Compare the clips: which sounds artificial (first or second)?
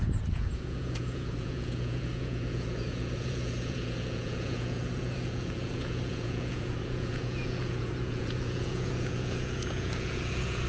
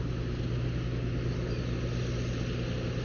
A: first